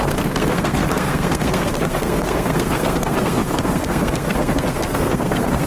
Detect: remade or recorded remade